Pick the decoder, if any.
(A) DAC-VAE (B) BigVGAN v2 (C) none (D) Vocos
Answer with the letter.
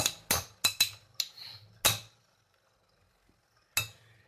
C